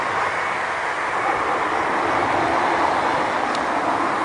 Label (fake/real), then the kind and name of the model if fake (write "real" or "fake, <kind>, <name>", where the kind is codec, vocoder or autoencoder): real